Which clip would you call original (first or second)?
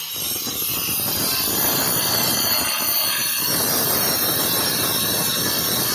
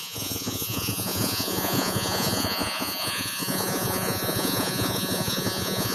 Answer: first